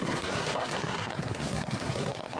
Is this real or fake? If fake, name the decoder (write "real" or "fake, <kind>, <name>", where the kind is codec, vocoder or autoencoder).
fake, codec, SNAC